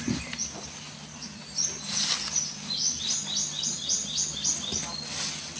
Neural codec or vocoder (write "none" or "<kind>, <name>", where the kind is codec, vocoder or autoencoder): none